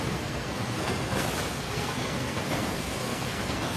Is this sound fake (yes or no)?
yes